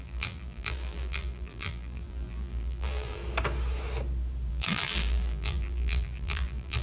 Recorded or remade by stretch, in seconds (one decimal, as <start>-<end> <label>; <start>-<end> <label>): 0.0-3.2 remade; 3.2-4.5 recorded; 4.5-6.8 remade

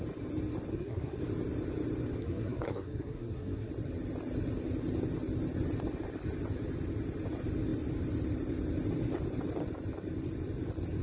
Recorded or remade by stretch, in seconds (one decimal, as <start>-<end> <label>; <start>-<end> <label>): 0.0-0.7 recorded; 0.7-1.2 remade; 1.2-2.2 recorded; 2.2-3.7 remade; 3.7-11.0 recorded

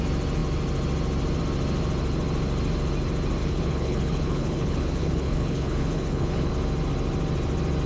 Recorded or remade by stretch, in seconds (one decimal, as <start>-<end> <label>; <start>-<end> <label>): 0.0-3.4 recorded; 3.4-6.5 remade; 6.5-7.9 recorded

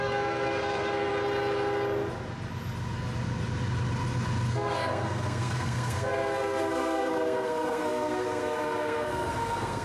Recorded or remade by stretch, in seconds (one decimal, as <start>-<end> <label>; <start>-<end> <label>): 0.0-1.1 remade; 1.1-4.5 recorded; 4.5-9.8 remade

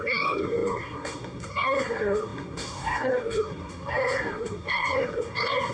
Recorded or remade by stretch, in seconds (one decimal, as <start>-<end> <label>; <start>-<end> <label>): 0.0-5.7 remade